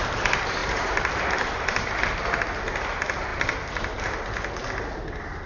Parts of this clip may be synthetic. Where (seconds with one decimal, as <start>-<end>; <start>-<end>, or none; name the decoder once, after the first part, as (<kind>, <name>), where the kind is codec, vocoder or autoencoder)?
none